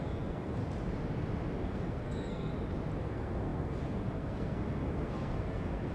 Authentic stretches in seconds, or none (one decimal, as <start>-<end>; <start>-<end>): 0.6-1.6; 2.5-3.0

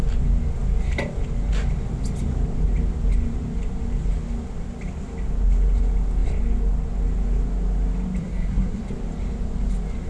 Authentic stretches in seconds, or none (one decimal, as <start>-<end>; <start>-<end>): 0.0-8.2; 8.8-10.1

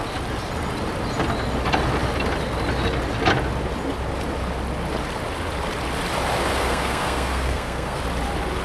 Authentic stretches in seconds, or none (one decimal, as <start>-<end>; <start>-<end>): 0.0-6.6; 8.0-8.6

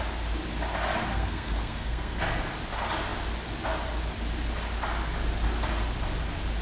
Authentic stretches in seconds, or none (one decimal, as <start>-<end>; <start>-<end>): 0.0-1.1; 2.2-6.6

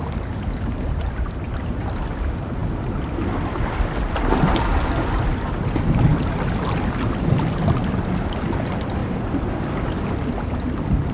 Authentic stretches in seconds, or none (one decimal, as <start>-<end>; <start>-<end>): 0.0-11.1